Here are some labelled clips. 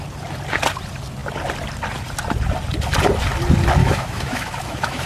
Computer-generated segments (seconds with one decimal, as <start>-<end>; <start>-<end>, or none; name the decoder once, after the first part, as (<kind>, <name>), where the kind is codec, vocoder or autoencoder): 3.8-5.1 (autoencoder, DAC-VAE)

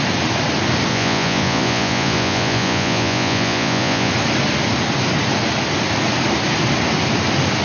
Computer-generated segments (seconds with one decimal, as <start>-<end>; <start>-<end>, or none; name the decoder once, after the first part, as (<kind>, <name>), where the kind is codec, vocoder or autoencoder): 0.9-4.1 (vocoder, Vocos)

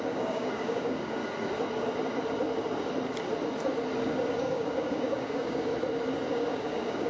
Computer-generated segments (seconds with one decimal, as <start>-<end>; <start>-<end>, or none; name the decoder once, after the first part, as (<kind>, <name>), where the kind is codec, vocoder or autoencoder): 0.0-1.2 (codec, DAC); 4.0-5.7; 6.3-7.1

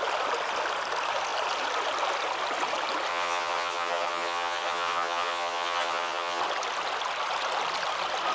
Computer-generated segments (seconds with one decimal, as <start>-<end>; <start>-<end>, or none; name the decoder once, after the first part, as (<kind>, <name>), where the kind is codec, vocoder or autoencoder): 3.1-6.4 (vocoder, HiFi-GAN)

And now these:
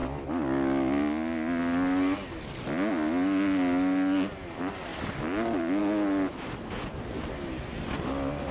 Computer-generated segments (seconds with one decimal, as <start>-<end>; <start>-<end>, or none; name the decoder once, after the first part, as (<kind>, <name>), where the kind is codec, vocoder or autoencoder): none

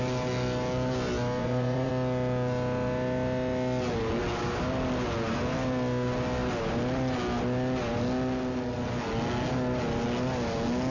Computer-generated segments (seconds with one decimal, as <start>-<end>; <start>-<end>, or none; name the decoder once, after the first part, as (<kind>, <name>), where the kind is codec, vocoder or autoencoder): 1.4-1.9 (vocoder, Vocos)